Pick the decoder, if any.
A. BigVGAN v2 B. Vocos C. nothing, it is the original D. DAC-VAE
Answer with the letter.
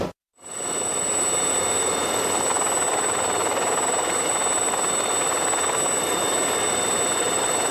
C